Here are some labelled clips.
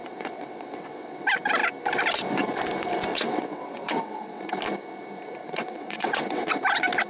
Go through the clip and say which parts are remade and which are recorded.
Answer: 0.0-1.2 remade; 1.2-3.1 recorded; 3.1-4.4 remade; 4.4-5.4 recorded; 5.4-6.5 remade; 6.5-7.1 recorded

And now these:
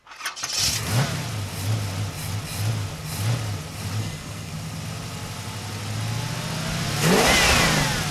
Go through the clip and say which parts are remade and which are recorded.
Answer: 0.0-4.0 recorded; 4.0-4.5 remade; 4.5-8.1 recorded

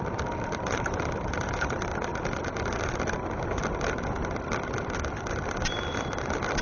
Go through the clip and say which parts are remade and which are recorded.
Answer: 0.0-1.9 remade; 1.9-3.8 recorded; 3.8-6.6 remade

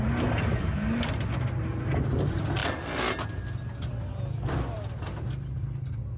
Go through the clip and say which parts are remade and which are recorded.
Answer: 0.0-0.5 recorded; 0.5-1.0 remade; 1.0-6.2 recorded

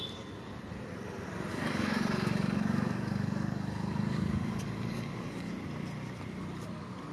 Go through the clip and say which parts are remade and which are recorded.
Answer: 0.0-1.5 recorded; 1.5-5.5 remade; 5.5-7.1 recorded

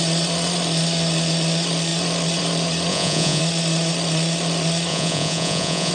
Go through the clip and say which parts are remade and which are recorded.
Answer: 0.0-2.9 recorded; 2.9-3.4 remade; 3.4-4.9 recorded; 4.9-5.9 remade